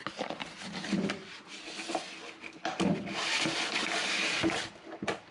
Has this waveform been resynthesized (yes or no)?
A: no